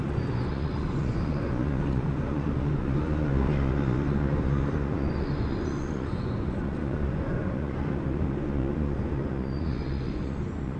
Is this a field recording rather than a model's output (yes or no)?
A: no